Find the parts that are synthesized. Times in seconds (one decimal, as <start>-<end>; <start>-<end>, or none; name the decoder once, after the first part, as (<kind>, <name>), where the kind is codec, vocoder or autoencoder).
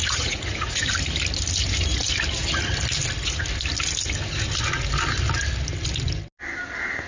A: 0.0-0.9 (vocoder, Vocos)